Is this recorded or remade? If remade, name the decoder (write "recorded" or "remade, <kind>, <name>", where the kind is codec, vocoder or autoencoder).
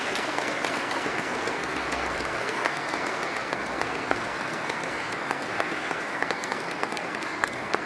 remade, codec, SNAC